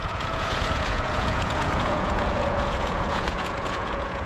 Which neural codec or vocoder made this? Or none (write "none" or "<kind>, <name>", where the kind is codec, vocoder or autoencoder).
vocoder, Vocos